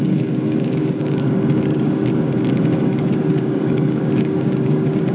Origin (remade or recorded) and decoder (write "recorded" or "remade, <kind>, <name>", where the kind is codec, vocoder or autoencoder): remade, codec, DAC